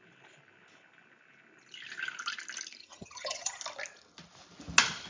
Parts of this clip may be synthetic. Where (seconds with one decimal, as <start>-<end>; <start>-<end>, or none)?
2.8-3.6